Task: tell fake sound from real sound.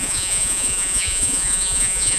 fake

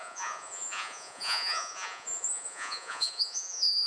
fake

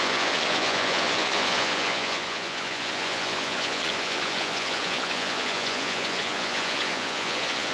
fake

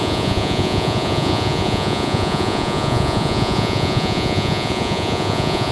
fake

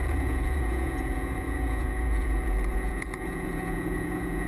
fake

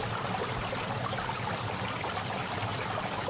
real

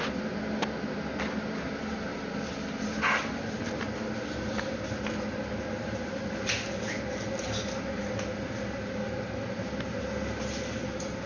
real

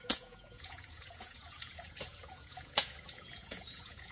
fake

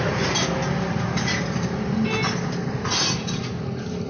real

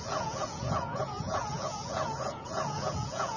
fake